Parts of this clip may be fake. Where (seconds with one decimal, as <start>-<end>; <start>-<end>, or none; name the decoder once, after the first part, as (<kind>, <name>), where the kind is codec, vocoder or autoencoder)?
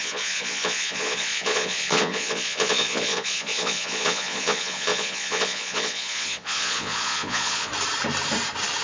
0.0-7.7 (vocoder, Vocos)